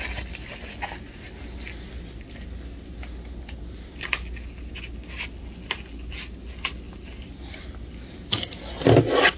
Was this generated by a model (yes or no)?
no